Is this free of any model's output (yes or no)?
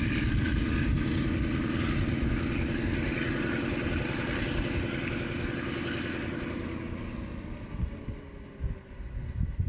yes